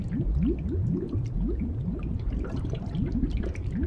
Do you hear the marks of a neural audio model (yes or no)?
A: no